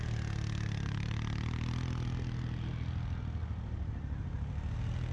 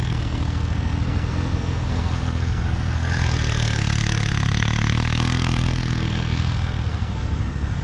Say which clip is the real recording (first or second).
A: first